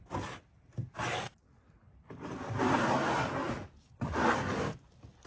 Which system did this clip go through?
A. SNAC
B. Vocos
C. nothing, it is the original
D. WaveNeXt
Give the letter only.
C